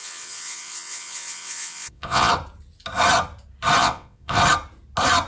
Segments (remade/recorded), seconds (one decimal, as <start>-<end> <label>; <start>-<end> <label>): 0.0-2.3 remade; 2.3-3.8 recorded; 3.8-4.4 remade; 4.4-5.3 recorded